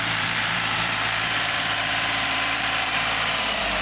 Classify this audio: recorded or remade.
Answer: remade